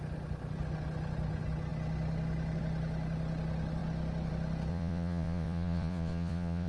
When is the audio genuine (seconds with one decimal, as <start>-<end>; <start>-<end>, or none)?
0.0-4.7